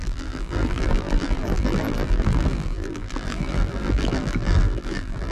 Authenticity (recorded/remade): remade